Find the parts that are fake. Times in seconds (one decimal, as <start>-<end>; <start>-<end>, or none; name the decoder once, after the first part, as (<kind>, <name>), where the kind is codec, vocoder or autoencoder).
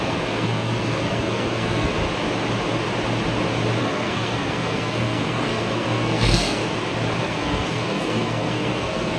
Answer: 0.0-1.9 (codec, SNAC); 3.8-6.6; 7.2-9.2